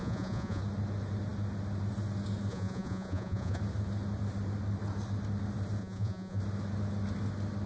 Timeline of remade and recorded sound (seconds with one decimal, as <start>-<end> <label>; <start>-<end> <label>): 0.0-0.6 remade; 0.6-2.5 recorded; 2.5-3.6 remade; 3.6-5.8 recorded; 5.8-6.4 remade; 6.4-7.7 recorded